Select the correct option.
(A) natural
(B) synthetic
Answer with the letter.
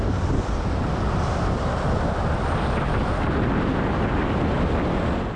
A